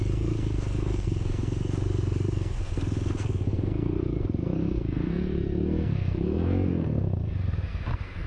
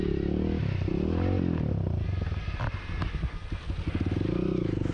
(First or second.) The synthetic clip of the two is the first